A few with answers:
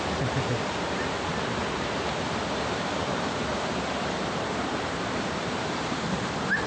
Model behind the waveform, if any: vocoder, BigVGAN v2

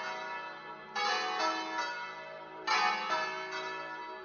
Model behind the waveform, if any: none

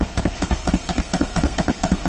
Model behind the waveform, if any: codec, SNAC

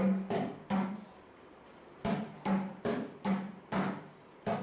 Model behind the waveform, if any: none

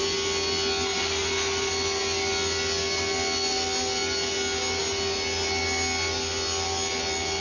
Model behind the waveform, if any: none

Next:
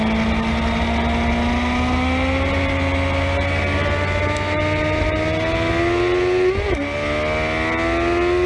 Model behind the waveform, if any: none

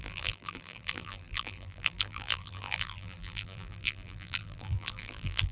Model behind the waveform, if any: vocoder, BigVGAN v2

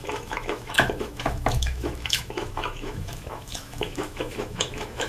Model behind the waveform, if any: autoencoder, DAC-VAE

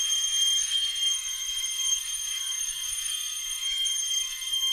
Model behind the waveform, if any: codec, SNAC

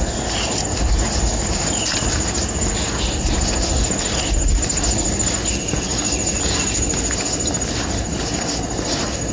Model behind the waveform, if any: none